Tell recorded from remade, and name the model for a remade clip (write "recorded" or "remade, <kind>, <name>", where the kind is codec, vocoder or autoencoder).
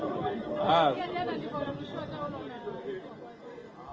recorded